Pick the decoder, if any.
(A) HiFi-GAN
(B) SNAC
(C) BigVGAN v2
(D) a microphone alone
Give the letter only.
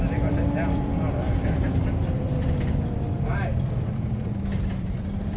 C